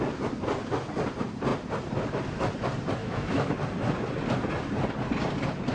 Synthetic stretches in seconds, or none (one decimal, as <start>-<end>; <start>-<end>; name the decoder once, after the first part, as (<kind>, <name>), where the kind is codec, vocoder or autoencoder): 3.0-3.5 (autoencoder, DAC-VAE)